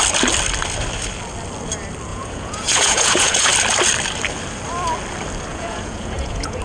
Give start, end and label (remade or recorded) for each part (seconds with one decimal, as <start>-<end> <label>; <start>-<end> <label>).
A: 0.0-2.1 recorded; 2.1-3.5 remade; 3.5-5.5 recorded; 5.5-6.6 remade